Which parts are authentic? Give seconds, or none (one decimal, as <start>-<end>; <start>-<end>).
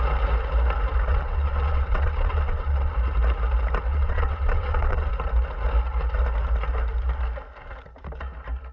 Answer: 0.0-1.1; 2.9-3.9; 5.1-8.7